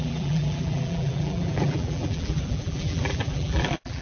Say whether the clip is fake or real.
fake